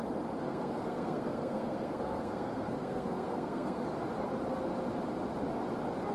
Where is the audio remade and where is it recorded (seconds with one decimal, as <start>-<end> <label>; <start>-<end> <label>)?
0.0-0.4 recorded; 0.4-3.9 remade; 3.9-6.1 recorded